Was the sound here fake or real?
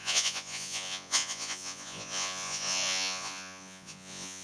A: fake